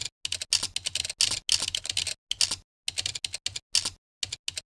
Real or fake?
real